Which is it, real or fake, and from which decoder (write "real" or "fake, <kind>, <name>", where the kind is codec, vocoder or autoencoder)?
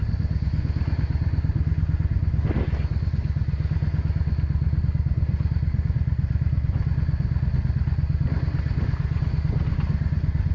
real